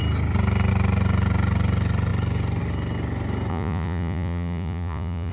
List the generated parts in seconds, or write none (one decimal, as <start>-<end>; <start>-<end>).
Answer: 3.5-5.3